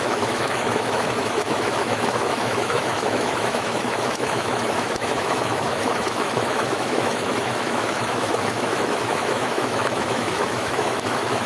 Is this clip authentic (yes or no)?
no